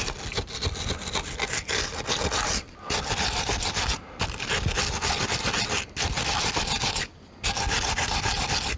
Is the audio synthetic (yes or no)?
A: no